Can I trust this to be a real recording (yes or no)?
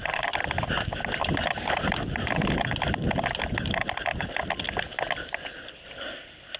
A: yes